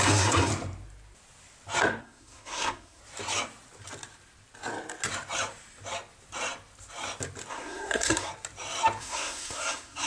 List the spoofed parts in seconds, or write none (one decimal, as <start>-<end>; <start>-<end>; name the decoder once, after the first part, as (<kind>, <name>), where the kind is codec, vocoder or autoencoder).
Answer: 0.0-0.5 (codec, SNAC); 2.0-3.0; 7.5-8.3; 9.0-10.1